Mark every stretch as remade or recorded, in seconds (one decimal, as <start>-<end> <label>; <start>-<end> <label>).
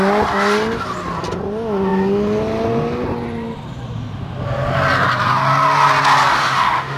0.0-6.3 recorded; 6.3-7.0 remade